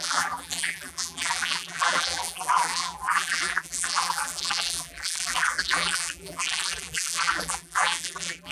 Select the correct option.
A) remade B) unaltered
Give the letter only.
A